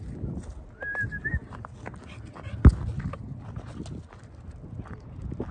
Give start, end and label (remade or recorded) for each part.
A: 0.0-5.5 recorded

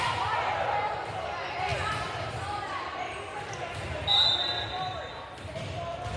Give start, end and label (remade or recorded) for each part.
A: 0.0-6.2 recorded

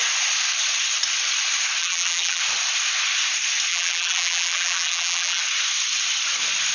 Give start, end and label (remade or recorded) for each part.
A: 0.0-1.8 recorded; 1.8-2.4 remade; 2.4-3.7 recorded; 3.7-5.4 remade; 5.4-6.7 recorded

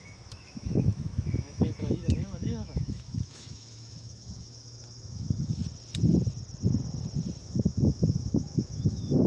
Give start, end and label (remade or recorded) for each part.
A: 0.0-5.6 remade; 5.6-7.4 recorded; 7.4-9.3 remade

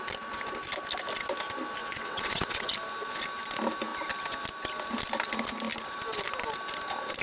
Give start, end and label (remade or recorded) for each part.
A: 0.0-1.8 recorded; 1.8-2.7 remade; 2.7-7.2 recorded

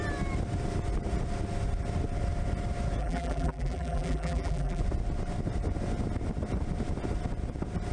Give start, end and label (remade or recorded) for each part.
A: 0.0-3.0 recorded; 3.0-4.8 remade; 4.8-7.9 recorded

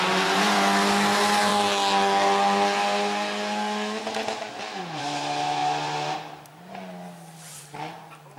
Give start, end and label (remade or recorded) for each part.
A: 0.0-8.4 recorded

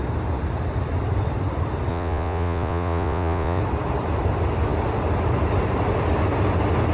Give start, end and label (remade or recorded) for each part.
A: 0.0-1.9 recorded; 1.9-3.6 remade; 3.6-6.9 recorded